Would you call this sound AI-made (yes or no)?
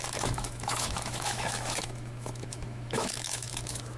yes